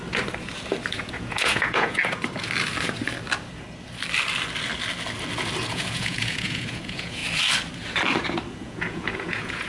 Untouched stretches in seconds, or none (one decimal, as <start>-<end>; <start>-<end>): 0.0-0.9; 2.0-5.7; 7.2-8.5